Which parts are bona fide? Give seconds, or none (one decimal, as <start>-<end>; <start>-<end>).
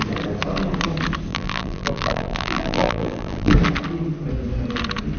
0.0-1.3; 3.5-5.2